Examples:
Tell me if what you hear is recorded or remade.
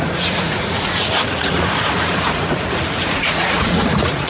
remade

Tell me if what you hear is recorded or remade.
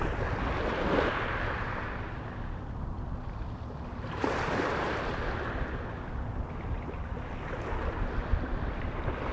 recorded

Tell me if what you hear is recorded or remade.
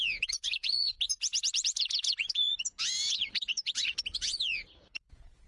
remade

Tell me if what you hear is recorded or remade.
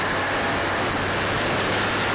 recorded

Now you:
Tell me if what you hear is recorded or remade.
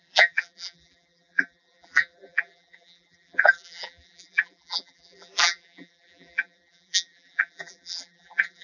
remade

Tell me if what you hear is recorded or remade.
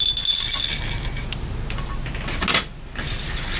recorded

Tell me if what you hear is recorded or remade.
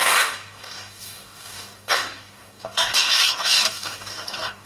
remade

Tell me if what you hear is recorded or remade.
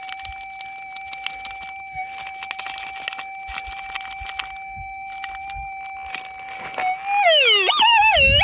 recorded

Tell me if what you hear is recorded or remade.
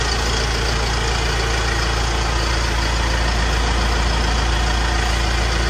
recorded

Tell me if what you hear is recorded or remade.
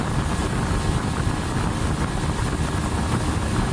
recorded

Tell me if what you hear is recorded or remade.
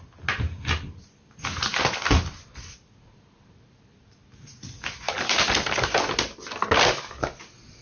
recorded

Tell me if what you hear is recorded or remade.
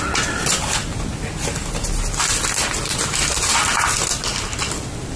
recorded